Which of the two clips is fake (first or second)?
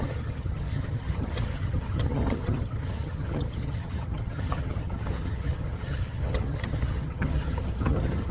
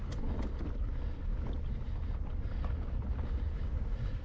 first